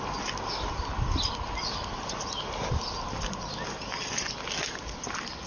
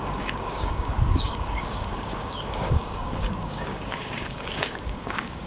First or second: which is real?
first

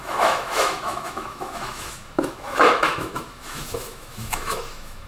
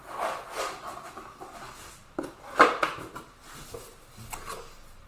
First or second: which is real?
second